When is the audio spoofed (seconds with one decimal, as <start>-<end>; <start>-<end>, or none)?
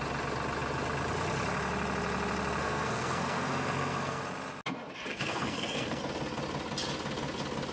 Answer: 2.6-4.2; 5.1-6.0